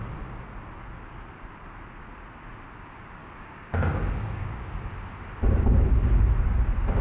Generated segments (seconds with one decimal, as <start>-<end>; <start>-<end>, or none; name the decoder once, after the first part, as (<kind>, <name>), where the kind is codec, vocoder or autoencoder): 3.2-4.9 (codec, DAC)